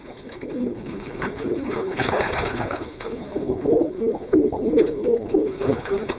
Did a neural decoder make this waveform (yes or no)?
yes